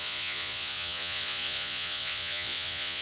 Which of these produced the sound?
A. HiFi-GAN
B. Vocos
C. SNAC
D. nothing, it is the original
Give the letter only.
B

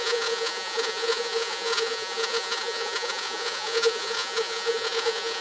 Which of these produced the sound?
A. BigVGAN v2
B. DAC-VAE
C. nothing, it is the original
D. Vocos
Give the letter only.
D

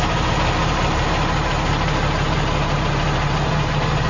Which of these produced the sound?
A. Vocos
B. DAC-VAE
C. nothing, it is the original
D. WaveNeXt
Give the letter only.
C